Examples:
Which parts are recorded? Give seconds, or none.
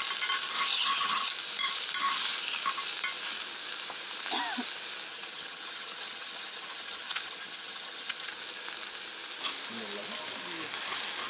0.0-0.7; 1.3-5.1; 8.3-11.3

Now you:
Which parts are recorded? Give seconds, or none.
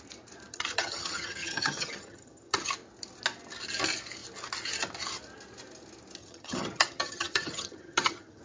0.0-0.5; 2.7-6.2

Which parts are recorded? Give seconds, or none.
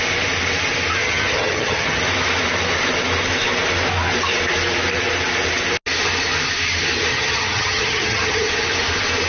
0.0-1.0; 2.0-7.1; 8.5-9.3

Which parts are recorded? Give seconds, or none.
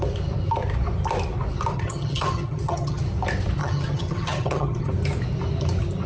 0.0-1.7; 3.0-3.6; 4.9-6.1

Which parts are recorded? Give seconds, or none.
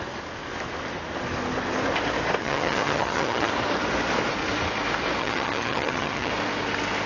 0.0-2.4; 3.5-5.2; 6.3-7.1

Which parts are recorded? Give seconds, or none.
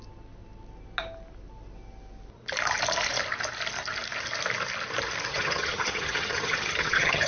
0.0-5.3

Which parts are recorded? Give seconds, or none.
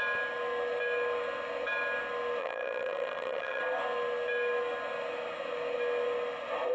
0.0-2.4; 3.6-6.7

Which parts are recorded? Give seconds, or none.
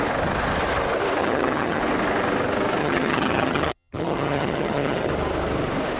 0.0-1.2; 1.8-2.8; 5.1-6.0